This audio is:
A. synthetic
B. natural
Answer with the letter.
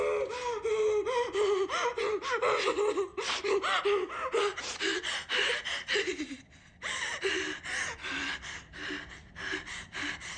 B